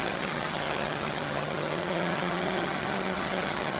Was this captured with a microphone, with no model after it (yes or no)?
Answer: no